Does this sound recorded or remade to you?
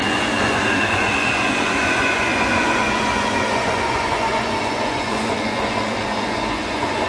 remade